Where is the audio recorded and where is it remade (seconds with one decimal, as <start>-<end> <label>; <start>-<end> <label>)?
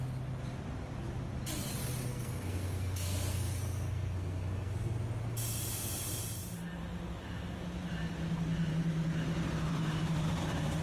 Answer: 0.0-2.1 recorded; 2.1-5.0 remade; 5.0-10.8 recorded